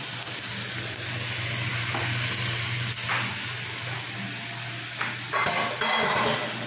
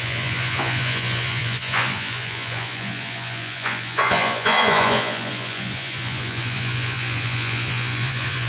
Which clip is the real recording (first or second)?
first